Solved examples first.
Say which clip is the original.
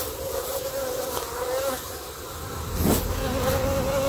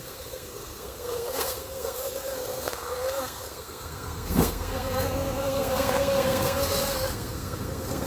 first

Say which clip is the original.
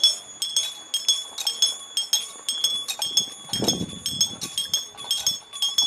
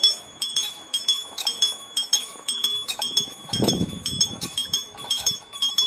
first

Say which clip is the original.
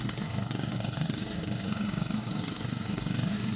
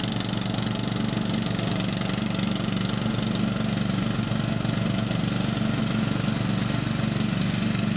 second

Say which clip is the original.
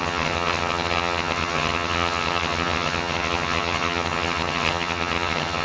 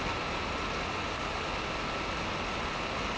second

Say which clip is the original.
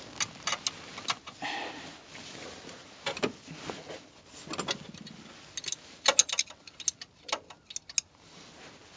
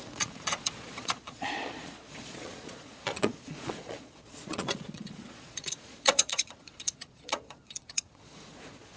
first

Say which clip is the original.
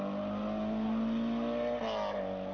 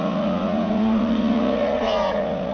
first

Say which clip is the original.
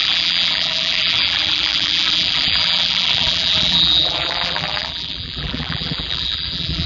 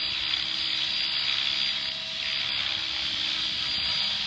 second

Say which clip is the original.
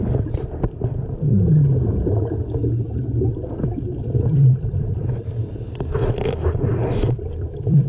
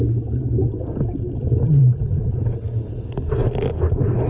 second